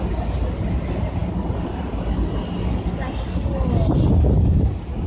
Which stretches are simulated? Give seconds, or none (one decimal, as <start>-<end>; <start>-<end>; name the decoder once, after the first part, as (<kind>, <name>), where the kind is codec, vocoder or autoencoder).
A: none